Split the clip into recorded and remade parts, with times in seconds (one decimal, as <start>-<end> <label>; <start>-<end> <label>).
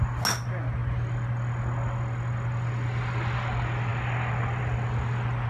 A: 0.0-5.5 recorded